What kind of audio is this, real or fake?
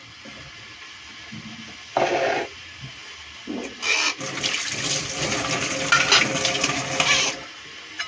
real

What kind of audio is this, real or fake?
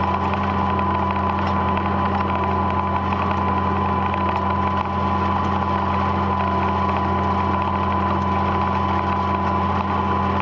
real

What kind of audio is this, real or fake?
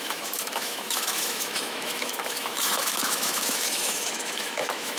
fake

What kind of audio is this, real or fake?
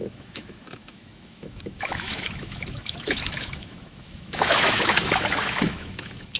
fake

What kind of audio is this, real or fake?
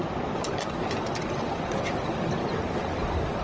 real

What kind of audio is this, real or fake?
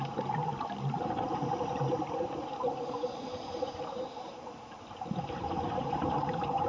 fake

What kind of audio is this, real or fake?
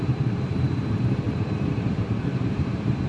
fake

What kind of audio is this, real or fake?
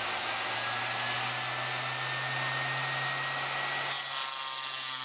real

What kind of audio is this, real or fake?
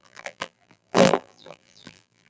fake